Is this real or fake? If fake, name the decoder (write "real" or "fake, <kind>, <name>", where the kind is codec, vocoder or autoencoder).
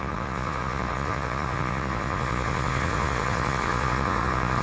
fake, vocoder, Vocos